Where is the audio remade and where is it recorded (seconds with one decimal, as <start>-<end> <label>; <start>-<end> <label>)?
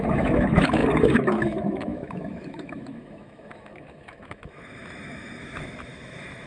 0.0-6.5 remade